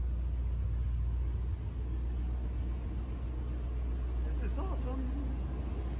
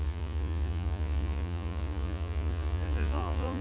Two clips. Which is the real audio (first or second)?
first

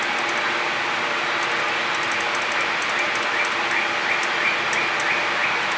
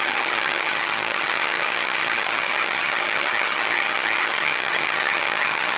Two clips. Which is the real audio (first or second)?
first